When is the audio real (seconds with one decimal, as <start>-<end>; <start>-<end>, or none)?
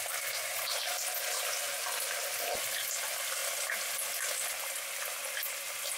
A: 0.0-6.0